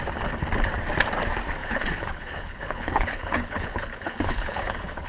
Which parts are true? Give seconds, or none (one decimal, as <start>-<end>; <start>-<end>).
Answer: 0.0-1.6